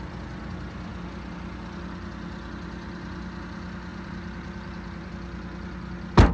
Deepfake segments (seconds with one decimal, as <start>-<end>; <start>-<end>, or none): 3.9-5.1